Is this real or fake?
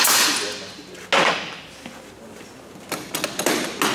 real